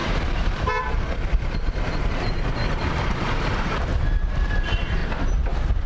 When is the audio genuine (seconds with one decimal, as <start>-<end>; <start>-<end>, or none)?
3.9-4.6; 5.0-5.9